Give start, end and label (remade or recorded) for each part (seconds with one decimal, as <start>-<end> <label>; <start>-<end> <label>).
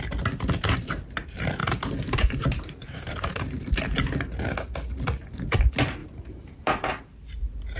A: 0.0-1.6 recorded; 1.6-3.8 remade; 3.8-6.0 recorded; 6.0-7.8 remade